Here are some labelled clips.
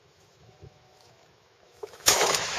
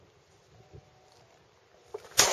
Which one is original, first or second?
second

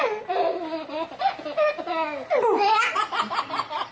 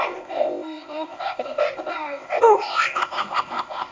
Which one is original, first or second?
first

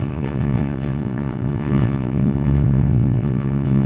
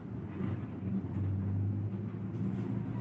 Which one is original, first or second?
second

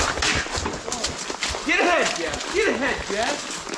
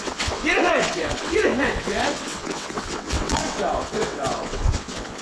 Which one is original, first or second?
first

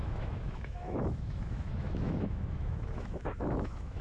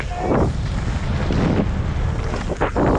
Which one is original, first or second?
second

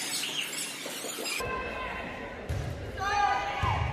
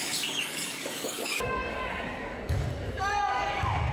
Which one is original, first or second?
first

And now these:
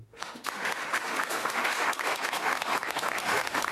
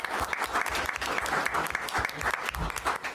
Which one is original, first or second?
second